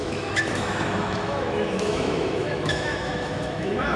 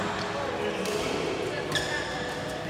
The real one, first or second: second